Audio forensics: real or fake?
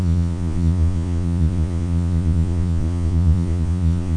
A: fake